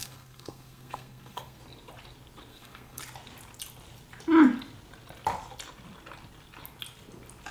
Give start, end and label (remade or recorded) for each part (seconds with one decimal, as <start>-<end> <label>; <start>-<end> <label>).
0.0-1.6 remade; 1.6-2.5 recorded; 2.5-3.0 remade; 3.0-7.5 recorded